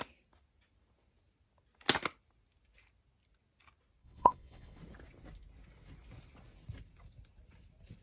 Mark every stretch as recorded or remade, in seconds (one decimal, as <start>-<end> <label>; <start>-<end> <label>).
0.0-4.0 recorded; 4.0-4.8 remade; 4.8-8.0 recorded